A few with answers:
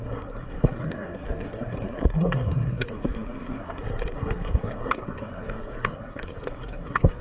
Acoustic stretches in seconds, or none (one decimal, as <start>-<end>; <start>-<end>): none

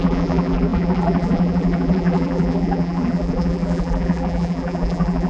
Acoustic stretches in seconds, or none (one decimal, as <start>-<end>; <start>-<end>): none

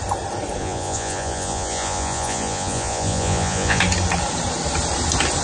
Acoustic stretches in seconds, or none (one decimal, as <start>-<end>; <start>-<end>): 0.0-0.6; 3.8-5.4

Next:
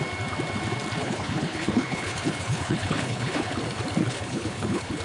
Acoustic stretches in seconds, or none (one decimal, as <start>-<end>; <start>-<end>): 0.0-1.0; 3.6-4.0